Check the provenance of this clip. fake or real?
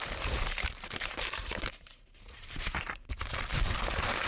fake